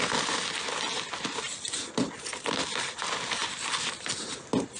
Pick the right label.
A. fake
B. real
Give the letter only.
B